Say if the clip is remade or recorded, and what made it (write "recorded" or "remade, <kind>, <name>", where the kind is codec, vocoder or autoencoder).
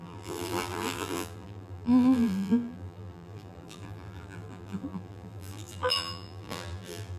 remade, vocoder, BigVGAN v2